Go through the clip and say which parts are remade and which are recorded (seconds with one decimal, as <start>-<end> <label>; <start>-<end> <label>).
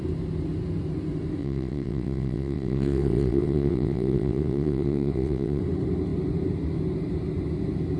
0.0-1.4 recorded; 1.4-5.6 remade; 5.6-8.0 recorded